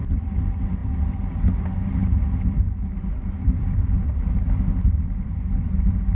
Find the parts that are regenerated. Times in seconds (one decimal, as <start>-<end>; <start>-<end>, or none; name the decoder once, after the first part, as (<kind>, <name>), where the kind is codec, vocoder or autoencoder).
0.0-2.0 (vocoder, BigVGAN v2); 3.2-6.1